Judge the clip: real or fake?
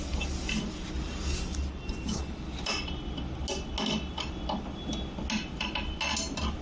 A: real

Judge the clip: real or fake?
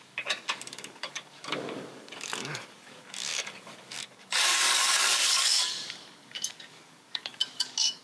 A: fake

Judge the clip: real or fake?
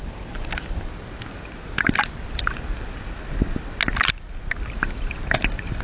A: real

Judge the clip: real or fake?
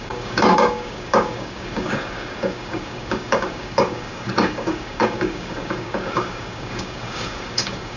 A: fake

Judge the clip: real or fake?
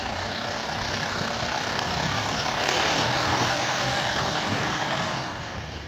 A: fake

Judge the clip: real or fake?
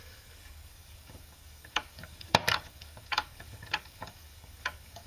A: fake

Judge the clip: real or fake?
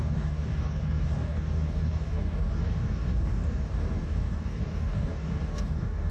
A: fake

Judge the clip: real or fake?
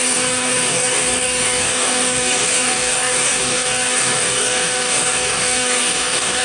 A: fake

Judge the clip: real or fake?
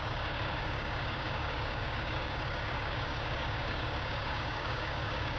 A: fake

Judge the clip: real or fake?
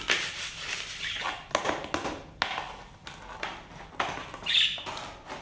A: real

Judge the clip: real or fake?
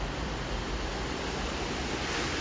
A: real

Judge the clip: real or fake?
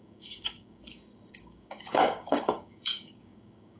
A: fake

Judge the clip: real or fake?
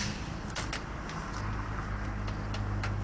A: real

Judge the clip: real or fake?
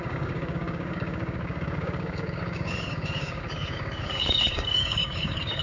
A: fake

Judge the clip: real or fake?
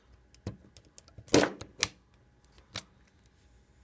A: real